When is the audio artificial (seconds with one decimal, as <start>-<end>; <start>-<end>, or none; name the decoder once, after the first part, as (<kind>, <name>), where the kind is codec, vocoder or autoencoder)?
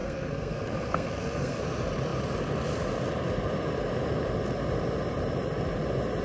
0.0-1.6 (codec, SNAC)